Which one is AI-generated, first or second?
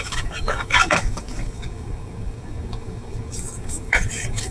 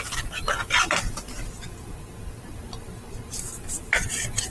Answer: first